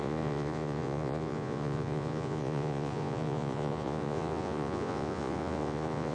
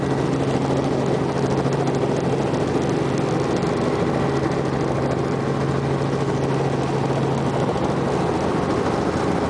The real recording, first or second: second